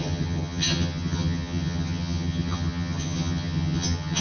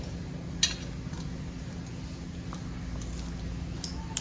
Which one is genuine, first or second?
second